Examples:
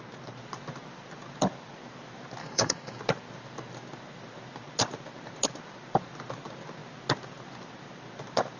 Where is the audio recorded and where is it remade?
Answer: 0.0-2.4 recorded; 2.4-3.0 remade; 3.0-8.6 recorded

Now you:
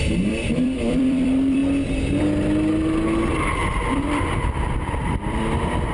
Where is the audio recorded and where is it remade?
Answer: 0.0-1.6 remade; 1.6-3.9 recorded; 3.9-5.9 remade

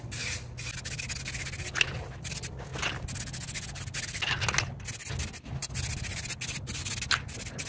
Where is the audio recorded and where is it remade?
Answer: 0.0-7.7 recorded

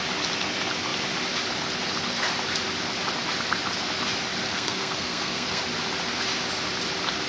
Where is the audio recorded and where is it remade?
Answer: 0.0-4.5 recorded; 4.5-5.6 remade; 5.6-7.3 recorded

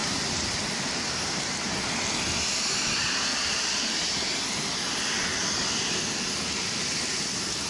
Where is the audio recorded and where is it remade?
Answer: 0.0-1.7 remade; 1.7-3.3 recorded; 3.3-4.4 remade; 4.4-7.7 recorded